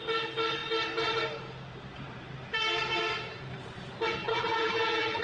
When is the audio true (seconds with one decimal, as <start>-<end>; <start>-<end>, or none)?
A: 0.0-4.2

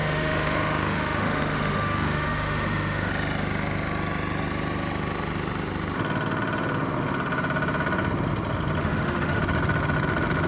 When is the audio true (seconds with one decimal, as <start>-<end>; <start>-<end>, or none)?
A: 3.1-8.8; 9.4-10.5

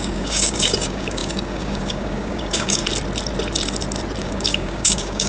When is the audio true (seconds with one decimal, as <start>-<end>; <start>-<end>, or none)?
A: 2.8-4.2

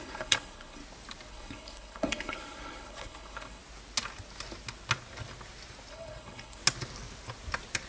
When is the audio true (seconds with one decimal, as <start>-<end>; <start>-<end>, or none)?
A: 0.8-1.3; 3.6-5.9; 6.6-7.9

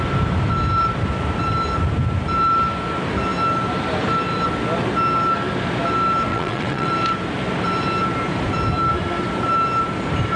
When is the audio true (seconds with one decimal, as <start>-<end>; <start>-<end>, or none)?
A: 0.0-6.3; 6.9-10.4

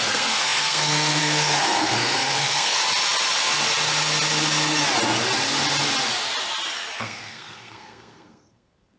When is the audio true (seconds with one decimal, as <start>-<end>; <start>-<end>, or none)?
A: 2.8-7.0